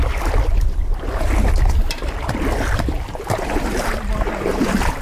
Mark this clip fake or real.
real